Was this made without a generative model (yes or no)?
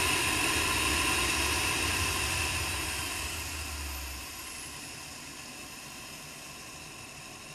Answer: yes